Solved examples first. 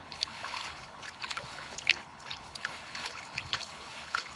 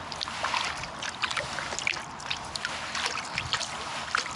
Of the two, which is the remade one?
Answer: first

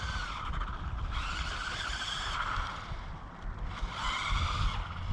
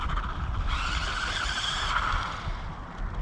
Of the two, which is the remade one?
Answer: first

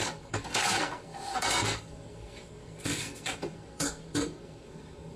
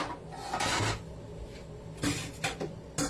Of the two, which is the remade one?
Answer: first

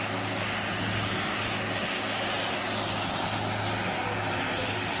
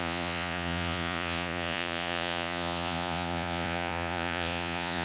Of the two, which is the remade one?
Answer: second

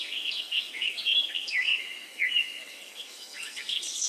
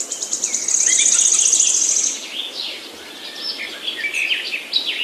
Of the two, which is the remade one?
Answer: first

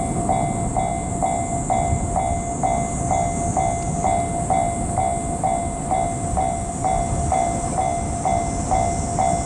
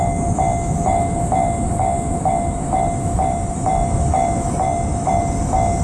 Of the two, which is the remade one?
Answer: second